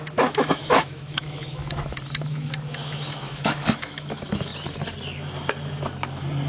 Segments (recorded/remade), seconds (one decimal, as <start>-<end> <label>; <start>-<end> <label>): 0.0-4.5 remade; 4.5-6.5 recorded